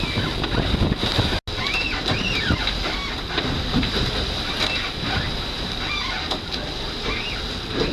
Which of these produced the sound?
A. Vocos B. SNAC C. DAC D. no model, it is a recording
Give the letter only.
D